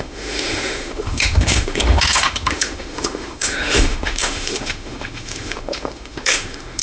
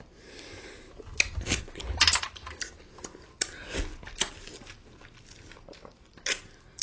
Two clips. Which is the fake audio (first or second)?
first